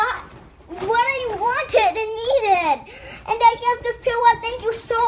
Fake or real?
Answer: fake